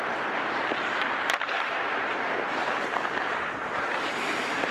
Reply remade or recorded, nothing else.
remade